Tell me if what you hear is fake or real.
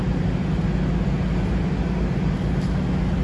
real